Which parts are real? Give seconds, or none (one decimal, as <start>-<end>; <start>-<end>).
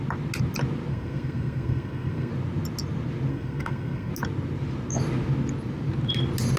0.0-0.9; 2.3-3.3; 4.1-6.6